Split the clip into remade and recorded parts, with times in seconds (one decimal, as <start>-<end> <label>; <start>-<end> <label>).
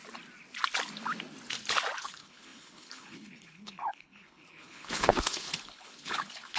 0.0-2.0 recorded; 2.0-6.6 remade